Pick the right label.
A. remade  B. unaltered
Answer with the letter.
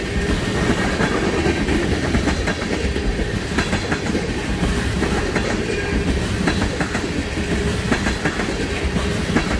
B